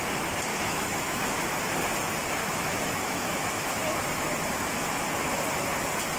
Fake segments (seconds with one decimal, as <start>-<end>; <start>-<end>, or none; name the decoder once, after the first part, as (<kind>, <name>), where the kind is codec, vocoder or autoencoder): 0.5-1.3 (autoencoder, DAC-VAE); 2.4-4.8

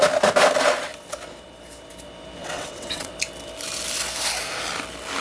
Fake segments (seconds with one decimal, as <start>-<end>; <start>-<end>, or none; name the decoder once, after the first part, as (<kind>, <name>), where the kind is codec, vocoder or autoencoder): 2.4-3.1 (vocoder, WaveNeXt)